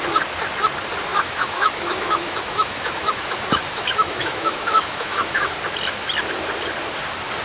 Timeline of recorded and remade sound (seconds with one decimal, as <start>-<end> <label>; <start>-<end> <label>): 0.0-1.1 recorded; 1.1-5.5 remade; 5.5-7.4 recorded